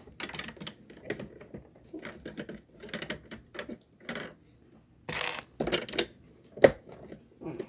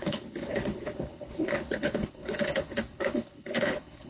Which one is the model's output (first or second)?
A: second